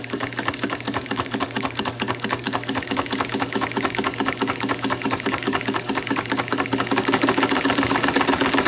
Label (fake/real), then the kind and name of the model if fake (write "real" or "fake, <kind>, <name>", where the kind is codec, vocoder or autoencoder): fake, codec, DAC